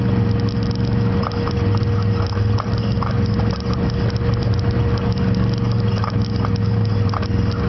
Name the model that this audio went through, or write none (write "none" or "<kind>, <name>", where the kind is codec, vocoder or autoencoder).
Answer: none